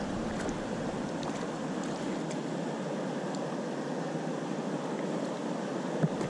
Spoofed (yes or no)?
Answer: no